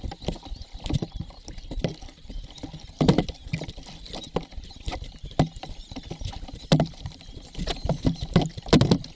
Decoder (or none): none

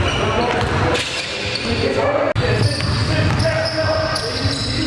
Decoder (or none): none